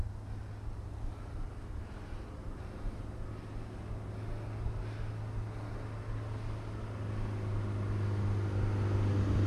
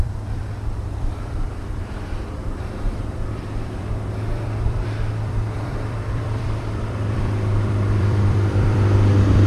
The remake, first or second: second